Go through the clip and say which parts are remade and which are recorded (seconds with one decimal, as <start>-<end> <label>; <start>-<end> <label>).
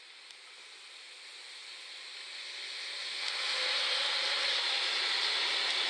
0.0-5.9 recorded